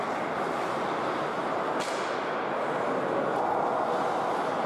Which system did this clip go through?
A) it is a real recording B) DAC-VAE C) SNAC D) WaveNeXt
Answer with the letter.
A